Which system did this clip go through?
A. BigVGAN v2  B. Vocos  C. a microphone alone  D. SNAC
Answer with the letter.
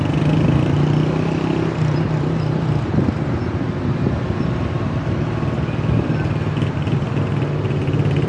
C